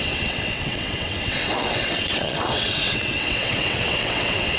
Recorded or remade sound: remade